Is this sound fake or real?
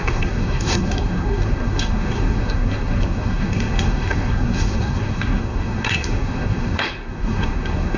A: fake